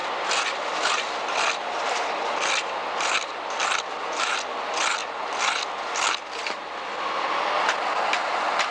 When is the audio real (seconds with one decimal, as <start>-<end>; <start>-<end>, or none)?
0.0-8.7